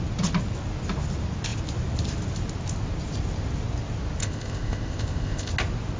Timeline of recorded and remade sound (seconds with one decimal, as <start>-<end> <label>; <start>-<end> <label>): 0.0-4.2 recorded; 4.2-5.5 remade; 5.5-6.0 recorded